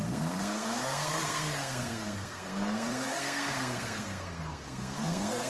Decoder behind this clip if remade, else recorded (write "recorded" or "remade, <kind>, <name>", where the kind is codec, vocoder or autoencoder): remade, codec, SNAC